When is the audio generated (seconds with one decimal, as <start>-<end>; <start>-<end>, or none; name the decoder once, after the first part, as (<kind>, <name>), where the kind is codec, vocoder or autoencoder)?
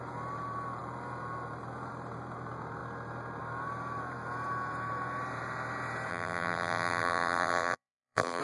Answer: 6.1-8.4 (vocoder, BigVGAN v2)